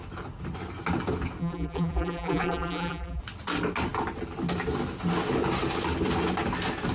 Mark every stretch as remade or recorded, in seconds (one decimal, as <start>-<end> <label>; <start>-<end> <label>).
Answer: 0.0-1.4 recorded; 1.4-3.2 remade; 3.2-6.9 recorded